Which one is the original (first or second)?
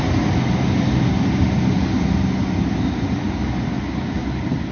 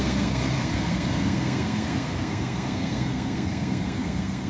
first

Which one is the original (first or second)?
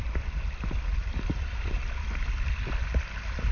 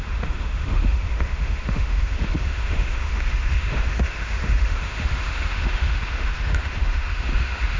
first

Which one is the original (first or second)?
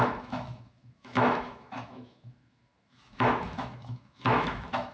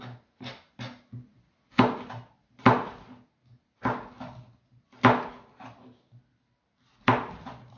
second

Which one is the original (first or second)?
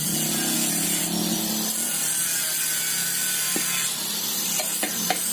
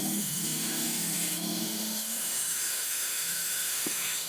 first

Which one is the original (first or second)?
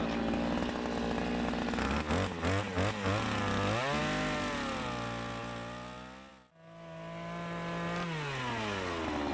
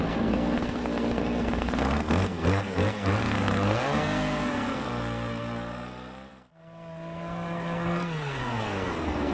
first